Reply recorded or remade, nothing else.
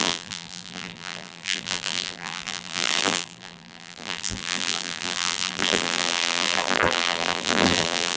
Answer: remade